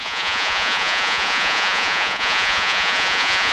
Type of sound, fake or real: fake